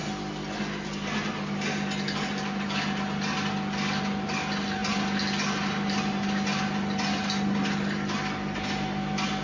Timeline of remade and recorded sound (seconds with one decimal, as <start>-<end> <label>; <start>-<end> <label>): 0.0-9.4 recorded